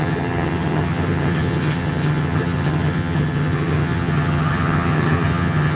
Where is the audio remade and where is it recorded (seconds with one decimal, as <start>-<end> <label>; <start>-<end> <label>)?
0.0-5.8 remade